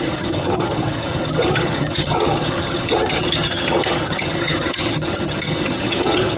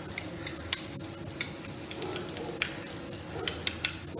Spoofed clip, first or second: first